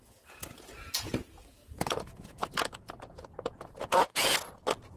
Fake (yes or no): yes